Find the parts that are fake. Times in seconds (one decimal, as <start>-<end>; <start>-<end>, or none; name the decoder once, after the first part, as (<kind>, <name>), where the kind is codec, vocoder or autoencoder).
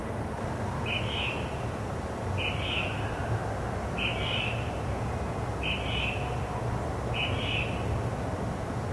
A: none